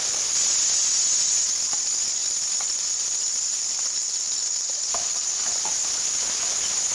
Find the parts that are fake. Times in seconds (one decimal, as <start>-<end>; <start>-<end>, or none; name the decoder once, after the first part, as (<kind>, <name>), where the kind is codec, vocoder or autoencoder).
none